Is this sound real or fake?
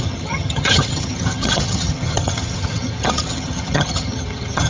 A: fake